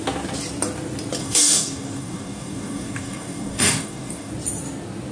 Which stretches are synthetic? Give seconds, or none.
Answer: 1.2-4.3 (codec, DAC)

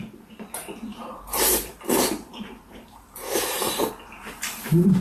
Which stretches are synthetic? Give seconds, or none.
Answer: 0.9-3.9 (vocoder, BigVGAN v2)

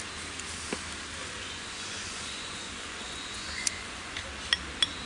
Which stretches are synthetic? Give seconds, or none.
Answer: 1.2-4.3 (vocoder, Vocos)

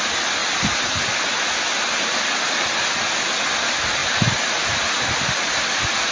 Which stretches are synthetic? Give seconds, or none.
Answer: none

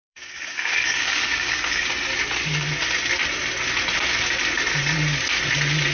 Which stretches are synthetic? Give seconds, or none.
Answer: 0.0-1.9 (codec, DAC)

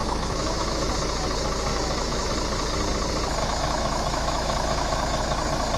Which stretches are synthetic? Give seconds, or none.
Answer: 0.0-0.9 (autoencoder, DAC-VAE); 1.7-2.3; 3.4-5.2

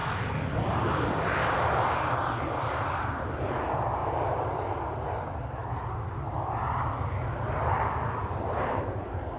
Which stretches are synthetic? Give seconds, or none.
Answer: 0.0-2.5 (vocoder, BigVGAN v2); 4.0-4.6; 8.2-9.0

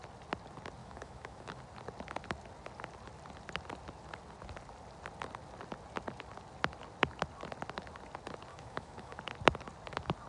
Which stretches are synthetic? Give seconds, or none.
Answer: 0.8-1.6 (autoencoder, DAC-VAE); 8.5-9.2